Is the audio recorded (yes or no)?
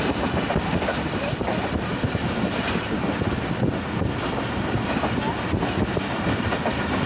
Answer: yes